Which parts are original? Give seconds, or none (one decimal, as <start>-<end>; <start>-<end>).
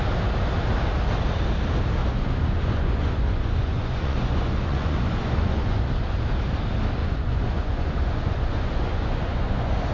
0.0-2.0; 5.8-7.0